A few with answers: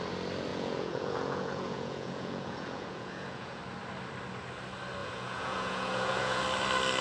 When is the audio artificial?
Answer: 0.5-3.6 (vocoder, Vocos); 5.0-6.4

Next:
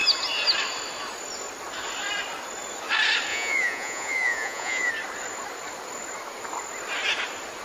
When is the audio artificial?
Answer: 3.3-4.9 (vocoder, Vocos)

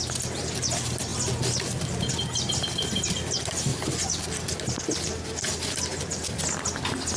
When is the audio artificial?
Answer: none

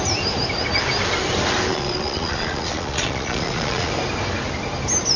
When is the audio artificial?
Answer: 1.7-3.9 (vocoder, Vocos)

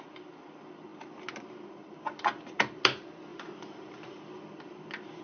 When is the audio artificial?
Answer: none

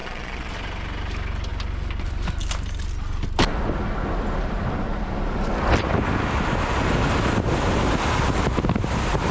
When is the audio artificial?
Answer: 0.0-0.5 (vocoder, Vocos)

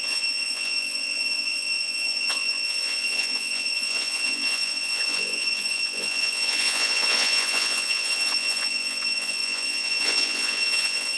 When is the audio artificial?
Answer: 0.0-11.2 (vocoder, Vocos)

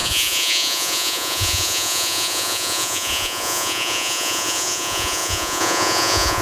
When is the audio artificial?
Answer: 0.0-6.4 (vocoder, Vocos)